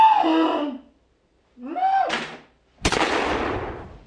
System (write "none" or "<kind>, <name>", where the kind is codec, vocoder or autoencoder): none